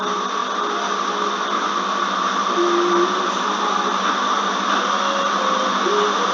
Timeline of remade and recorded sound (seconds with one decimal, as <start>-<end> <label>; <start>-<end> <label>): 0.0-6.3 recorded